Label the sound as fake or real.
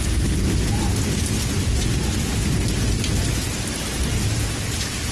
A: real